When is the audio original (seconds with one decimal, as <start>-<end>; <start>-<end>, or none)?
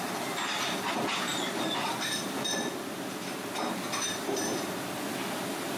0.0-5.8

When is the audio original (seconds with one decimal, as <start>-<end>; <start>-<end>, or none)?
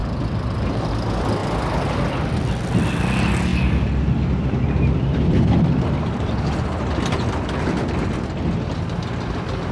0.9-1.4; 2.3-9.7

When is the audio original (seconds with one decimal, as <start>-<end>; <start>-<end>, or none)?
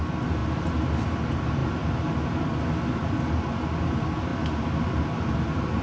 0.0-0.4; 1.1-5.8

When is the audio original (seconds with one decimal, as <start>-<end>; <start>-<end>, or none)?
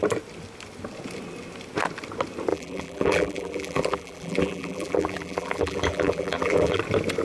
0.0-2.5; 6.8-7.2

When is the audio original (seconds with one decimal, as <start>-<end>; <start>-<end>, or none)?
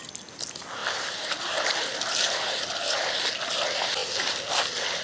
0.0-0.8; 2.6-5.0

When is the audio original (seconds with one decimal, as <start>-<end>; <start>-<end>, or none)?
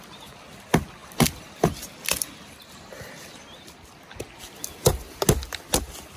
0.0-6.2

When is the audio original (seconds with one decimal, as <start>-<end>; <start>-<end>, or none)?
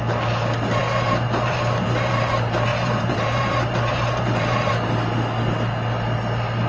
0.0-0.8; 2.3-2.7; 4.7-6.7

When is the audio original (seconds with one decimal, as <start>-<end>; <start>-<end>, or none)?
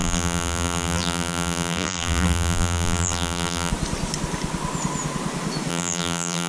3.7-5.7